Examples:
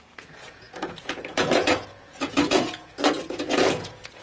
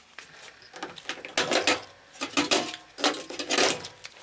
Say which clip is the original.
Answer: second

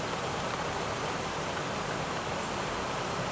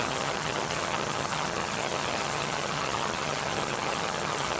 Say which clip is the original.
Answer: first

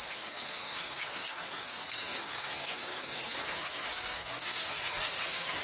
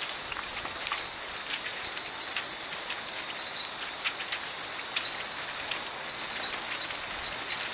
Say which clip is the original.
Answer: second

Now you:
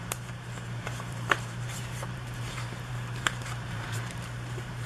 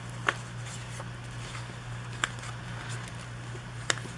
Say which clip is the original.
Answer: second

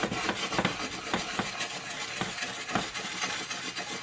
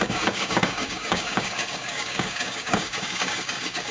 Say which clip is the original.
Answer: first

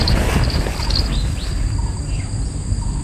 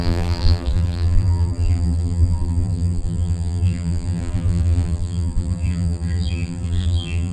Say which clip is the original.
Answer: first